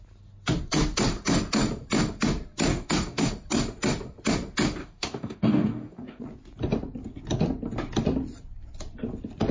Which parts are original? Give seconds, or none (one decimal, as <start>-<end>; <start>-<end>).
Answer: 0.0-2.7; 3.3-4.8; 6.2-9.5